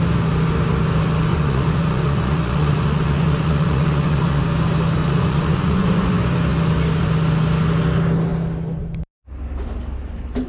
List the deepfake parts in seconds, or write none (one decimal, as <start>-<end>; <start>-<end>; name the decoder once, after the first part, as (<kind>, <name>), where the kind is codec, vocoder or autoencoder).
1.3-4.4 (vocoder, Vocos); 5.0-6.1